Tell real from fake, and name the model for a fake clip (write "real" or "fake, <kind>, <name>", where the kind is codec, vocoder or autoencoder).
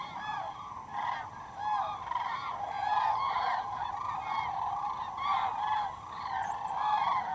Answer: real